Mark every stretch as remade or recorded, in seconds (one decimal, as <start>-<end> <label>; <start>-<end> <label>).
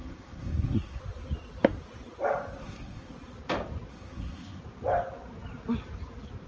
0.0-1.0 remade; 1.0-2.6 recorded; 2.6-3.1 remade; 3.1-3.9 recorded; 3.9-4.6 remade; 4.6-6.5 recorded